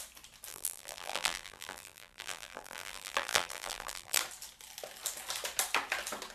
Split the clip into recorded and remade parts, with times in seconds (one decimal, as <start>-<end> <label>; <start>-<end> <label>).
0.0-0.5 recorded; 0.5-4.2 remade; 4.2-6.3 recorded